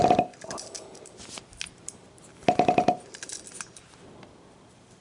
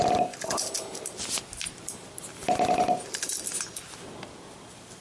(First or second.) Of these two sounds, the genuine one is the second